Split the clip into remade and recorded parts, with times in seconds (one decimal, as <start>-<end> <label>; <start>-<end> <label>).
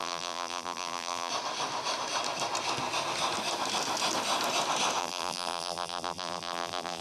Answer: 0.0-1.3 remade; 1.3-5.0 recorded; 5.0-7.0 remade